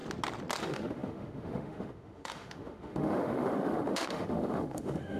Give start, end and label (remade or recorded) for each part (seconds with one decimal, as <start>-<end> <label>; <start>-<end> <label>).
0.0-0.6 recorded; 0.6-5.2 remade